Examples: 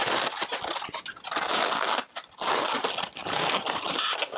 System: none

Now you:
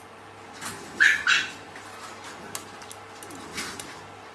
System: none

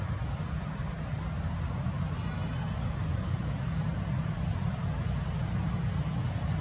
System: none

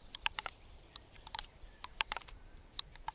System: vocoder, BigVGAN v2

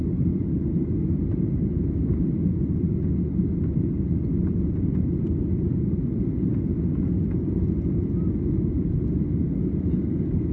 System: none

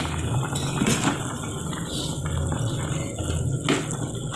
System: none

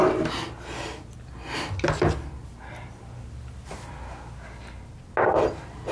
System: none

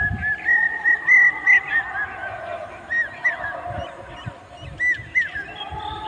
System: none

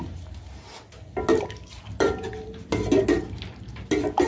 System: none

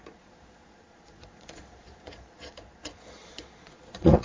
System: vocoder, Vocos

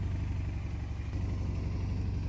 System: none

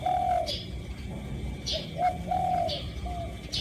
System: none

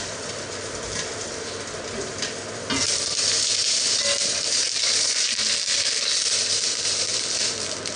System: vocoder, BigVGAN v2